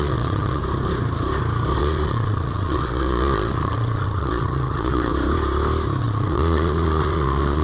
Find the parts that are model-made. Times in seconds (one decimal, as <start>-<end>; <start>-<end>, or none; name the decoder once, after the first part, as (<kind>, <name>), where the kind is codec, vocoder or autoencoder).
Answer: 0.0-0.6 (vocoder, Vocos); 1.8-5.1; 6.0-7.6